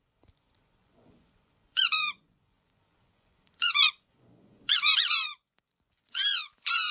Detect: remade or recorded remade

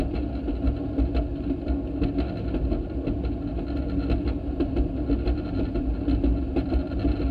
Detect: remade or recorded recorded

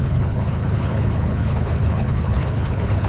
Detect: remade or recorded remade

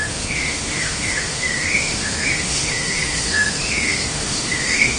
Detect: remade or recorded remade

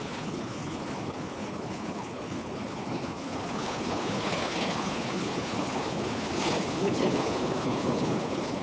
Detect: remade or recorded remade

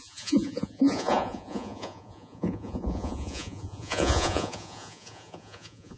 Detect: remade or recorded remade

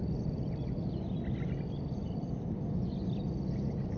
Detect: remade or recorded recorded